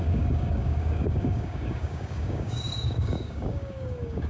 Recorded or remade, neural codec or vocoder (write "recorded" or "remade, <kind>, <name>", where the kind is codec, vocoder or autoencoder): remade, codec, DAC